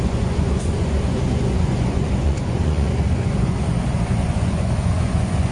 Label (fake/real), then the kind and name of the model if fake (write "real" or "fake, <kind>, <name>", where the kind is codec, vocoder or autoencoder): fake, vocoder, Vocos